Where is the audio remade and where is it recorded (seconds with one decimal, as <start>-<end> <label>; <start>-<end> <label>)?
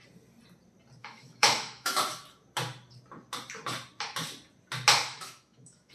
0.0-1.0 recorded; 1.0-2.0 remade; 2.0-5.0 recorded; 5.0-5.9 remade